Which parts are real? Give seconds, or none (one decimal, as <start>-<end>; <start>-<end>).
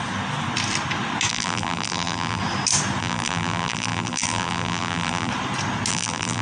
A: 0.0-1.3; 2.4-3.0; 5.3-5.9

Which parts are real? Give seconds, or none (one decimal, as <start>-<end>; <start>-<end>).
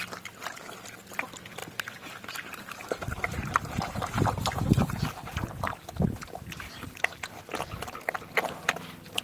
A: 0.0-1.6; 6.5-9.2